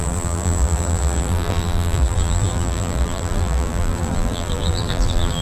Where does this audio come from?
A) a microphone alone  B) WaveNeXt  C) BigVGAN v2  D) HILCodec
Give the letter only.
C